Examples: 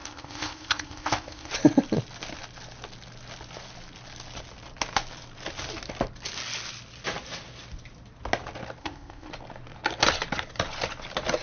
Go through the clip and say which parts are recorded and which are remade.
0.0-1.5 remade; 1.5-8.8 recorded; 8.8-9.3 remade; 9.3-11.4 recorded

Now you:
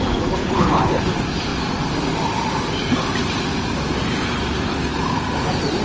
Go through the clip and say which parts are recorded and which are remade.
0.0-0.4 recorded; 0.4-1.0 remade; 1.0-5.8 recorded